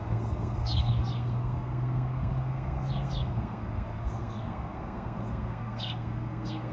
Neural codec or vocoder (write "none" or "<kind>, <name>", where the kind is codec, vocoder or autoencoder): codec, SNAC